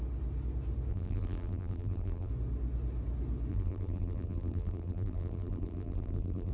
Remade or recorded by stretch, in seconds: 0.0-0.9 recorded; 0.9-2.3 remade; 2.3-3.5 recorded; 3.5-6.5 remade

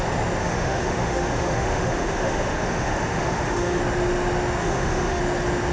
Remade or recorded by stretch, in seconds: 0.0-0.4 recorded; 0.4-3.8 remade; 3.8-4.6 recorded; 4.6-5.2 remade; 5.2-5.7 recorded

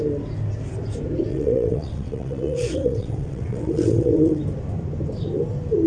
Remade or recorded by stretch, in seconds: 0.0-1.3 recorded; 1.3-4.4 remade; 4.4-5.9 recorded

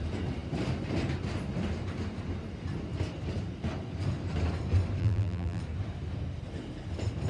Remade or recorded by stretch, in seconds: 0.0-5.0 recorded; 5.0-5.6 remade; 5.6-7.3 recorded

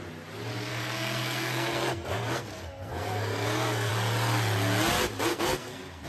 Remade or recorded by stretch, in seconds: 0.0-0.7 recorded; 0.7-3.9 remade; 3.9-5.3 recorded; 5.3-6.1 remade